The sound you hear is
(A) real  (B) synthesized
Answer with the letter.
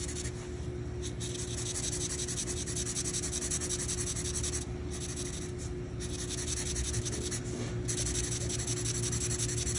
A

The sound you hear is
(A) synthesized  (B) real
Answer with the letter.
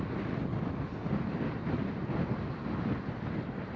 B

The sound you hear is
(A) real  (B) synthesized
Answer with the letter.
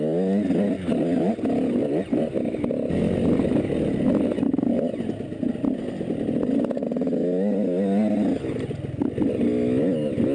A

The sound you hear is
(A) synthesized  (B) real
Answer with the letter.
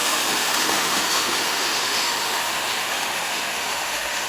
A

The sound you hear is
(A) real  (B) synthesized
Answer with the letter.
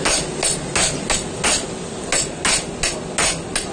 A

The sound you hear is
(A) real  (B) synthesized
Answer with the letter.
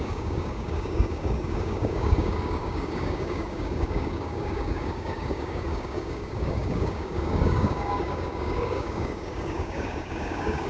B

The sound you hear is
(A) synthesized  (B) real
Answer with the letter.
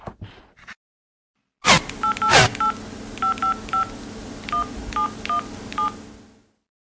B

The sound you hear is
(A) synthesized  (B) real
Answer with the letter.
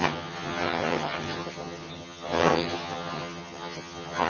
A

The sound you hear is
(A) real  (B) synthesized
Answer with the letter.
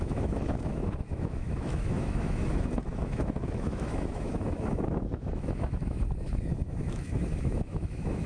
B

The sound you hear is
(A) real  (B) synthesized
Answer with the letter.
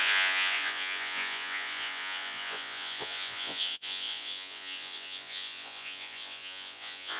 B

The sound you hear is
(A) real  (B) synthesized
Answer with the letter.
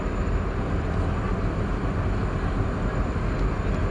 A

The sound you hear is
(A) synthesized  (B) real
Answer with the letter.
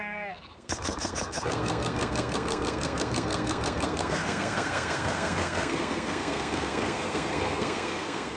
A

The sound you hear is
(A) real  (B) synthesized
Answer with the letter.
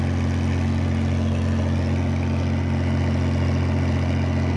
A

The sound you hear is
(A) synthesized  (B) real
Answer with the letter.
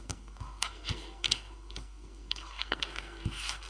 A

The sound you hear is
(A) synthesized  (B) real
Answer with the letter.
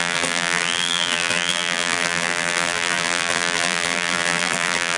A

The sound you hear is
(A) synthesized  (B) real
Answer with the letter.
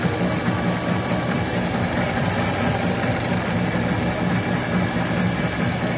B